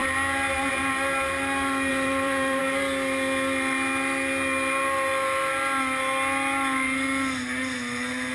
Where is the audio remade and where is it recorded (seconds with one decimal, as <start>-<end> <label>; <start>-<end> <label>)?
0.0-1.9 recorded; 1.9-2.6 remade; 2.6-8.3 recorded